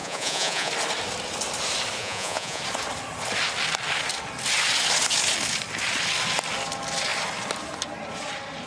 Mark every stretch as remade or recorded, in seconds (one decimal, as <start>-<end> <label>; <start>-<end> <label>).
0.0-0.7 remade; 0.7-2.0 recorded; 2.0-2.6 remade; 2.6-8.7 recorded